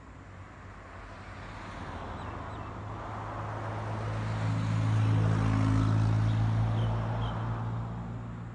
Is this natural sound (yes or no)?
yes